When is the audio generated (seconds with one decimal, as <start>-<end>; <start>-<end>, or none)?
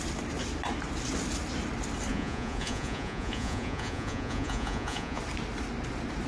2.1-5.2